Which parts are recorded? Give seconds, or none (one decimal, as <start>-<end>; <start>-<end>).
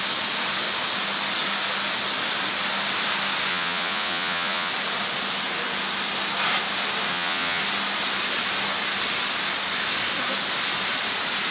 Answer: 0.0-3.5; 4.7-7.1; 7.6-11.5